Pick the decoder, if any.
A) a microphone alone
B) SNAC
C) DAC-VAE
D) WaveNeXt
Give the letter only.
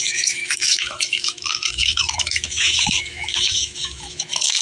C